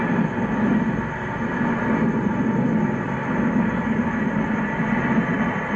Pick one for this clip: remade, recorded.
recorded